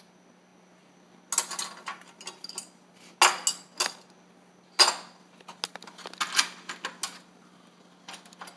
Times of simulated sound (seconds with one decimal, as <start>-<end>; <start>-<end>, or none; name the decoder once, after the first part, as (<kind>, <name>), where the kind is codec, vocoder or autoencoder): none

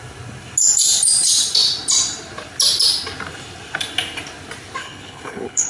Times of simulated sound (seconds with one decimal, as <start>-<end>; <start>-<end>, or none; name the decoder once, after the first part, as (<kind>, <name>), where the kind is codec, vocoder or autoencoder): 4.8-5.7 (codec, HILCodec)

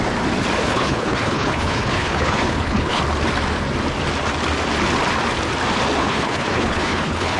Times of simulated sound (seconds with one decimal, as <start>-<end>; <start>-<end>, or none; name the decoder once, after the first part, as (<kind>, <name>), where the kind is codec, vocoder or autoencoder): 0.6-3.0 (codec, HILCodec); 6.0-7.4

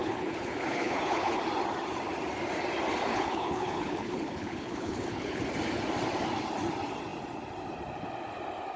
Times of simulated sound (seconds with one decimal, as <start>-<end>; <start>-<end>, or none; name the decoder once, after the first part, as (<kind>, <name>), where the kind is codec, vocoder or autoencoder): 0.0-1.4 (codec, HILCodec); 3.1-5.4

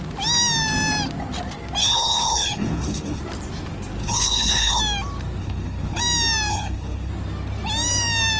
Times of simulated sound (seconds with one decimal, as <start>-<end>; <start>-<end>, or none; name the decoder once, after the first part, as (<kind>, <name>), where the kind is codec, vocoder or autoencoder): 1.8-3.2 (codec, HILCodec); 4.0-4.8; 5.4-6.0; 6.5-7.1

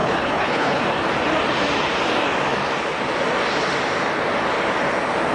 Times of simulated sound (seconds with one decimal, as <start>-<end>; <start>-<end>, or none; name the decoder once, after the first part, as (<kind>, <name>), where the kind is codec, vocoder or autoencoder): 0.0-0.8 (codec, HILCodec)

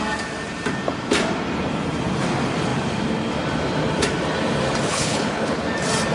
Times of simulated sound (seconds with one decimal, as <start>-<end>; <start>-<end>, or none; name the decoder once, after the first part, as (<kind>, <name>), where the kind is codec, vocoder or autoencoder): 4.9-5.6 (codec, HILCodec)

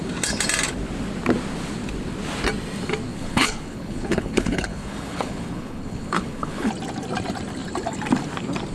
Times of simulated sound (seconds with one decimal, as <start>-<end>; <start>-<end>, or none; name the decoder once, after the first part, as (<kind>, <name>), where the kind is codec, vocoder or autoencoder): 3.1-6.7 (codec, HILCodec)